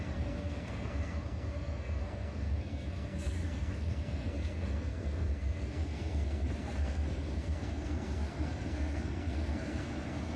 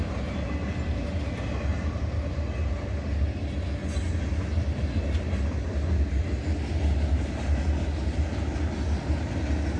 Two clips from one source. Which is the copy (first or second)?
first